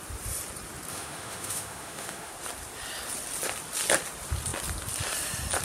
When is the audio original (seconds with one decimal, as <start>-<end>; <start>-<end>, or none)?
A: 0.0-0.9; 2.3-5.6

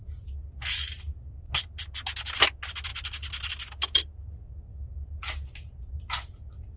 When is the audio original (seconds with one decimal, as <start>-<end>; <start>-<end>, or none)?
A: 0.0-6.8

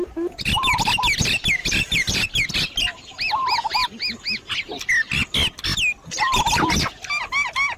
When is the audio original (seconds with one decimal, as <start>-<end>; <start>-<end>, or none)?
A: 0.0-1.6; 2.5-7.8

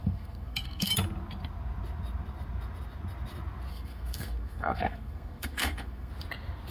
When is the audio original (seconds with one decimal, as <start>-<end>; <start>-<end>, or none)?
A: 0.9-3.7; 6.1-6.7

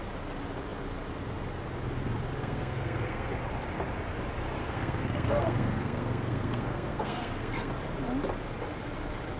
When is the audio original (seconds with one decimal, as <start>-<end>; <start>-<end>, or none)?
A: 0.0-2.4; 3.3-4.6; 7.7-9.4

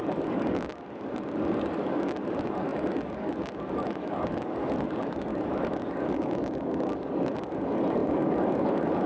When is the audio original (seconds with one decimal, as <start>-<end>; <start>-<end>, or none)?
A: none

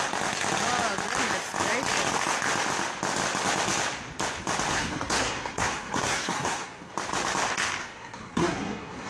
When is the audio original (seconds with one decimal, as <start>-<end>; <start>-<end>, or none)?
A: 0.0-4.7; 6.9-7.8

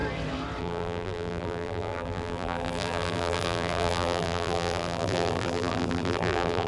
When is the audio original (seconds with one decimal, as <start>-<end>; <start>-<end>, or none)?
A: 0.0-0.6